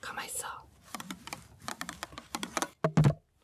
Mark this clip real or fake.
real